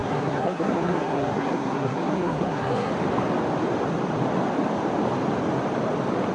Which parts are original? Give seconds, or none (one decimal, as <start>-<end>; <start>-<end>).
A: 2.9-6.3